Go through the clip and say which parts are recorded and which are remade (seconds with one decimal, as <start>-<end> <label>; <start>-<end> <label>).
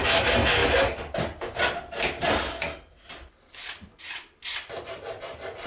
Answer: 0.0-5.7 recorded